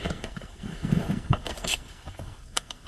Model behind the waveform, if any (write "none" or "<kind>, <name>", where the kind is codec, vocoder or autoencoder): codec, SNAC